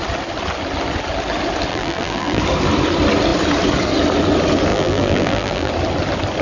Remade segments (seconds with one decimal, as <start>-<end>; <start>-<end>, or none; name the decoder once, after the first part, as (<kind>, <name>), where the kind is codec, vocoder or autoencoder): 1.7-2.4 (vocoder, BigVGAN v2); 4.7-5.7